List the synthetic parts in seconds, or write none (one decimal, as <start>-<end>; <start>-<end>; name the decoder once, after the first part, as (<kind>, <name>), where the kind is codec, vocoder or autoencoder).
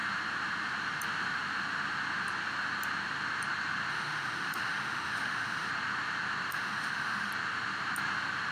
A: 3.9-5.7 (autoencoder, DAC-VAE); 6.5-7.3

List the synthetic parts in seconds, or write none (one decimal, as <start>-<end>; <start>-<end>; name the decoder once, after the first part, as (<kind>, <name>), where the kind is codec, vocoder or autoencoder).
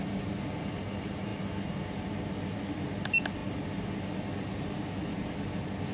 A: none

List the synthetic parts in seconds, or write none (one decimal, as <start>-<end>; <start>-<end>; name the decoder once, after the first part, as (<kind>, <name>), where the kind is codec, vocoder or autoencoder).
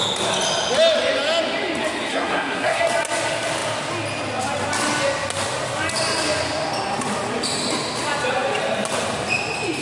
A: 2.1-2.8 (codec, SNAC)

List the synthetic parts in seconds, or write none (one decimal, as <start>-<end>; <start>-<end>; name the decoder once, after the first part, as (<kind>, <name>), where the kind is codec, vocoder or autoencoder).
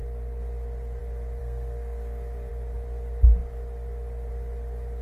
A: 1.4-2.5 (codec, SNAC)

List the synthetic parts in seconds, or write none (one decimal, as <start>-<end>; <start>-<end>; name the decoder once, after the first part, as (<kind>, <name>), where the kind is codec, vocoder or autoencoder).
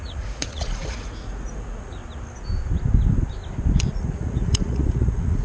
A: 0.0-2.0 (vocoder, Vocos); 3.9-5.4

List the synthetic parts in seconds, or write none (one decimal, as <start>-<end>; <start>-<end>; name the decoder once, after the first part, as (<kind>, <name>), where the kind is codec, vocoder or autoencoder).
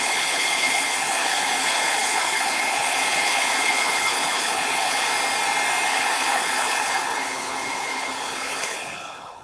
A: 0.0-5.1 (codec, HILCodec); 5.9-9.4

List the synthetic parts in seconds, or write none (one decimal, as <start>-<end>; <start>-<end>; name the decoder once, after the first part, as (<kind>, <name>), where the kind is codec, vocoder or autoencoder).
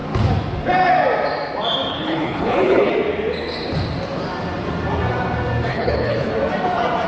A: 1.9-2.9 (codec, HILCodec); 5.7-6.3